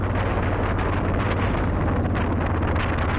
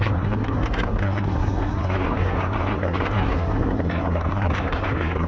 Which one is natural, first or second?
first